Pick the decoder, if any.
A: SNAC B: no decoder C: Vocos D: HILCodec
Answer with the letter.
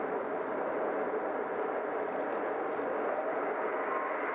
B